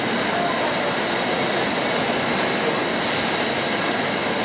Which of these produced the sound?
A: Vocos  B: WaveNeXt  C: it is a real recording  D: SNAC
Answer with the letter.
C